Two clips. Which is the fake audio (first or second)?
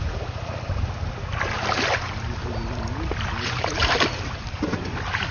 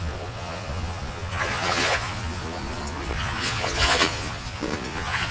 second